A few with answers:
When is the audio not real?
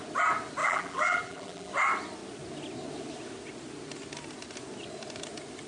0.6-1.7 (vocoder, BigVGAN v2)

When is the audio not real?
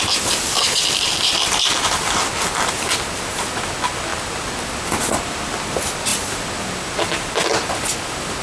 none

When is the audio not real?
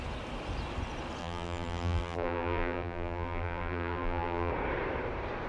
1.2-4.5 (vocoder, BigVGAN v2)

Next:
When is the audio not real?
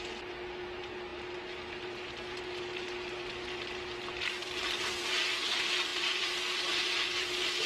none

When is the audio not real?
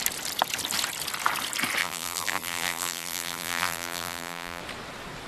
1.8-4.6 (vocoder, BigVGAN v2)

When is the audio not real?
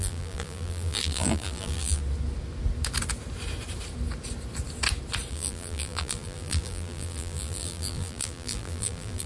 0.0-2.0 (vocoder, BigVGAN v2); 5.3-9.3